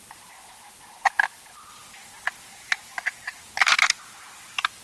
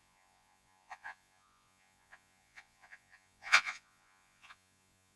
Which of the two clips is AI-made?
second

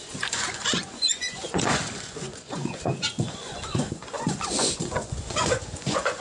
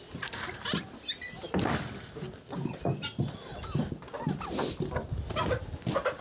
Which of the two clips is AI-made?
first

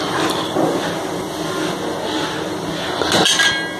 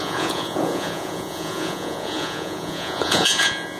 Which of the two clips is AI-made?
second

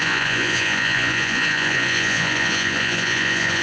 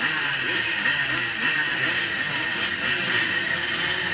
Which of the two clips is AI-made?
first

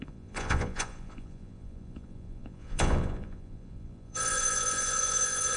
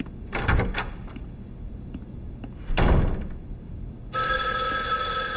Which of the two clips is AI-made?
first